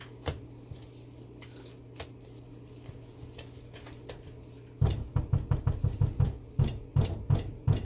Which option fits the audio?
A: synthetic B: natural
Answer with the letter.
B